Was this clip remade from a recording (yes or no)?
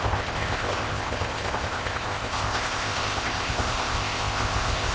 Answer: yes